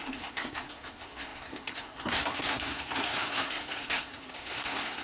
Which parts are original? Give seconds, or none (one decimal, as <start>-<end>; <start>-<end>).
none